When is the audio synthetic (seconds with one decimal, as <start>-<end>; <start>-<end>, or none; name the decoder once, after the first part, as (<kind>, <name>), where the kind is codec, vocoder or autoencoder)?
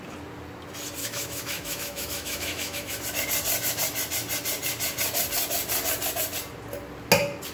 1.0-3.0 (autoencoder, DAC-VAE)